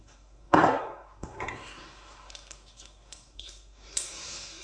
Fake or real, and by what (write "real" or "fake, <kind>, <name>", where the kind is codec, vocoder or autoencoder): fake, codec, SNAC